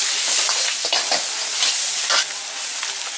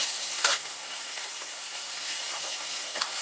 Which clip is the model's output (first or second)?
second